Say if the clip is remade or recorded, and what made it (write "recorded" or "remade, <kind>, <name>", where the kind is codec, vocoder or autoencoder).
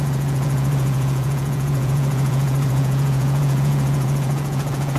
remade, vocoder, Vocos